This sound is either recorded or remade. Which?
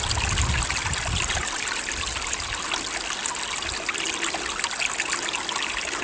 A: recorded